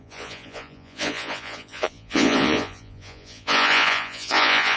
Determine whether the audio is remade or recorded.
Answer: remade